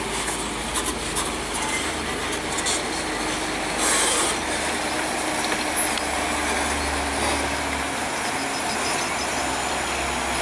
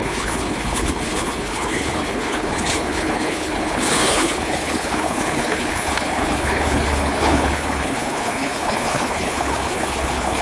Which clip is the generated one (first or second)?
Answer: second